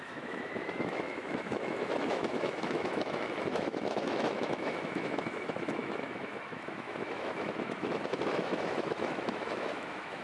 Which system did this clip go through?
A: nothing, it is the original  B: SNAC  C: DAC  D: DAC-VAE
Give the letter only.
D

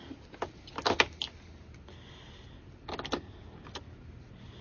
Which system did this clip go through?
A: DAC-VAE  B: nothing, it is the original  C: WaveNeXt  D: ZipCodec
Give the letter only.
B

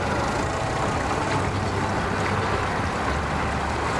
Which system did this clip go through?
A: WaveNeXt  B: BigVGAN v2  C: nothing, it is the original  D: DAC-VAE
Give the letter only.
C